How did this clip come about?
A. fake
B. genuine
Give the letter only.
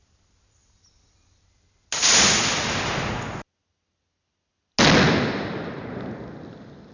B